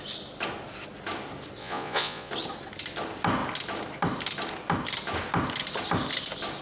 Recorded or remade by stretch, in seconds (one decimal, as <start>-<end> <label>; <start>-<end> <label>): 0.0-1.6 recorded; 1.6-2.3 remade; 2.3-6.6 recorded